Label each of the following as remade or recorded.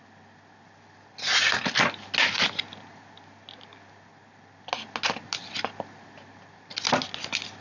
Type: recorded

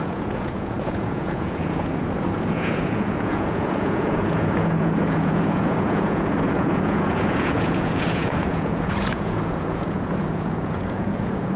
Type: remade